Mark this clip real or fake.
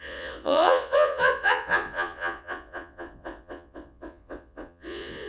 fake